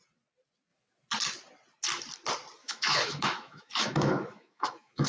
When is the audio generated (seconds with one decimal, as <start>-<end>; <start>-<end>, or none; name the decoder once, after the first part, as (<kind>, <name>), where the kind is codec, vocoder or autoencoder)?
2.6-5.1 (autoencoder, DAC-VAE)